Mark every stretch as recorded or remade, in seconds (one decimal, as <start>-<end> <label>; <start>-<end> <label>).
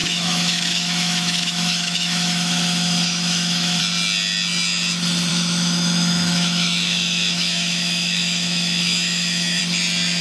0.0-3.8 remade; 3.8-5.3 recorded; 5.3-9.6 remade; 9.6-10.2 recorded